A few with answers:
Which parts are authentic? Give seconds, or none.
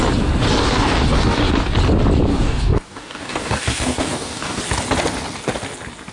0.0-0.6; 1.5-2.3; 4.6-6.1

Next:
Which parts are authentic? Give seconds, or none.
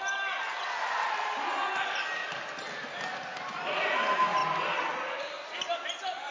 0.0-6.3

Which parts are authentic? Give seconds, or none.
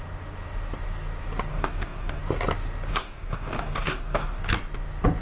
0.0-1.5; 2.2-2.9; 4.4-5.2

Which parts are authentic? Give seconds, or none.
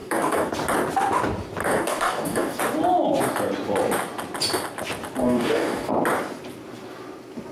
0.5-1.6; 2.6-5.2; 5.9-7.5